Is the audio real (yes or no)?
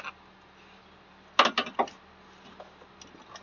yes